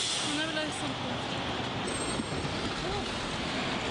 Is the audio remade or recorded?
recorded